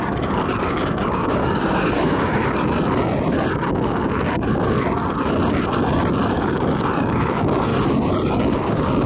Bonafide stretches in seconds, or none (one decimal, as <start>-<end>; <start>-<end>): 2.4-6.3; 7.7-8.3